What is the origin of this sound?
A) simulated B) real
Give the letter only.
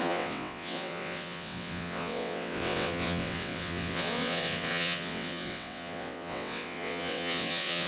A